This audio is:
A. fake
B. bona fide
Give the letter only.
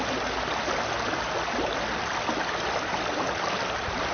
B